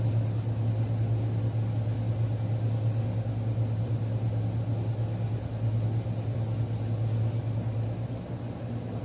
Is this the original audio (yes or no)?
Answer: yes